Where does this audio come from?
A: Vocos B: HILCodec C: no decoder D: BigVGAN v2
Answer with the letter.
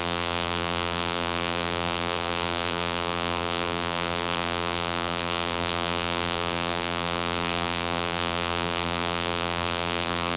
D